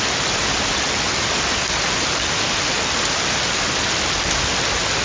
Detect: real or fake real